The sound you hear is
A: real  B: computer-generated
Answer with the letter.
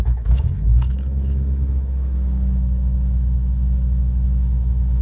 B